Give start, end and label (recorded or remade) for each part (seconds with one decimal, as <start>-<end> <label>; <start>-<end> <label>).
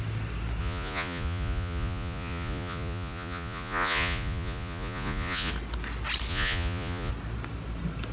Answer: 0.0-0.6 recorded; 0.6-5.5 remade; 5.5-6.3 recorded; 6.3-7.1 remade; 7.1-8.1 recorded